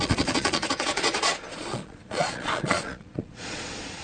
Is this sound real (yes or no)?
no